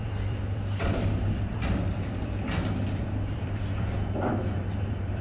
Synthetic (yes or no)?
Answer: yes